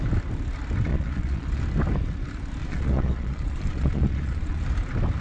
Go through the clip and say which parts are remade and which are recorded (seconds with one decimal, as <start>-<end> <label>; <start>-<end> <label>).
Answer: 0.0-0.9 recorded; 0.9-1.6 remade; 1.6-2.6 recorded; 2.6-4.6 remade; 4.6-5.2 recorded